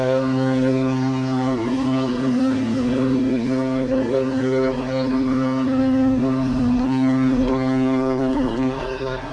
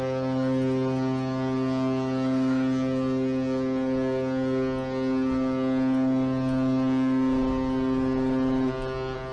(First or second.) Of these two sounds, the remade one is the first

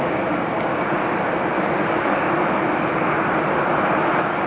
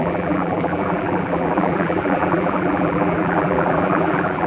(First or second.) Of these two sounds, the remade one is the second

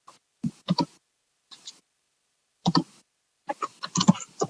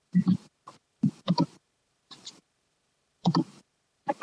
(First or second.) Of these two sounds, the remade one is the second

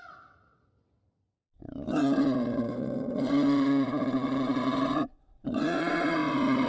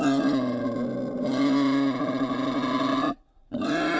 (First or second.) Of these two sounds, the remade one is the first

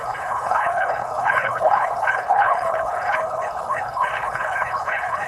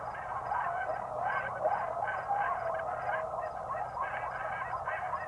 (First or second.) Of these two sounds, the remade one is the first